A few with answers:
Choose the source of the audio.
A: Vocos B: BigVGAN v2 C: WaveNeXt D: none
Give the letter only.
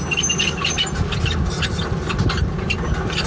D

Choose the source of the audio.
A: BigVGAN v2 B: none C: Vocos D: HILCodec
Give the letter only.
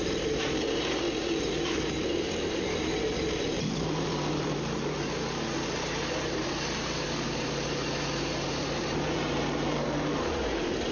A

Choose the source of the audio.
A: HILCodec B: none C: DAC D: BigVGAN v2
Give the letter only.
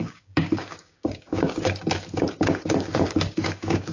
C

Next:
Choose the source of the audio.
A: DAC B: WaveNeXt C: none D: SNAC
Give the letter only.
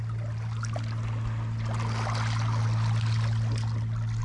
C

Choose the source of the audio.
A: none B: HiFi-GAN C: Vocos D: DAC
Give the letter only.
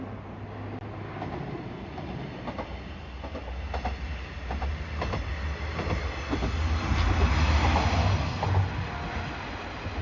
A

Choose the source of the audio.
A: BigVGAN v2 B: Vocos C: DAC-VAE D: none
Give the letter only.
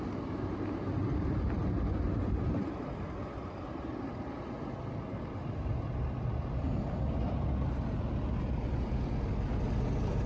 D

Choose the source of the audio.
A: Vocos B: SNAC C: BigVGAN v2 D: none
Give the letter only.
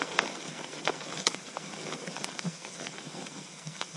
B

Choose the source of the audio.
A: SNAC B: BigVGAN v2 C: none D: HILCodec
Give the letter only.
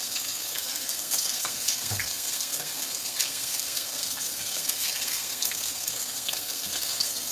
A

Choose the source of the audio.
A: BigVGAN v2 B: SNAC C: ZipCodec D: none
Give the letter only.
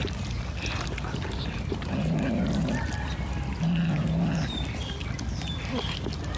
D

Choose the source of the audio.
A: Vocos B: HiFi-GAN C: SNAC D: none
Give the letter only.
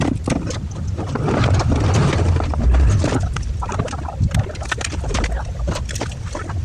D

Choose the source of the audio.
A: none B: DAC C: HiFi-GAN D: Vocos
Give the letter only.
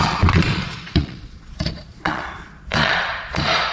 D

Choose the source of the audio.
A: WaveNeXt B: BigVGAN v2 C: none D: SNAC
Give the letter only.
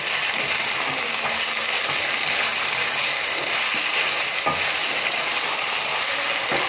C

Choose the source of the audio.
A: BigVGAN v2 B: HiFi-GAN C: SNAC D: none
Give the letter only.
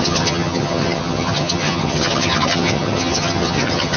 B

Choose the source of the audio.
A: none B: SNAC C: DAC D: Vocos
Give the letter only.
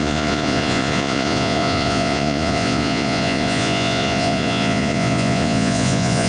D